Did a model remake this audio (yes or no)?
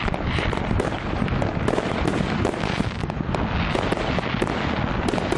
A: no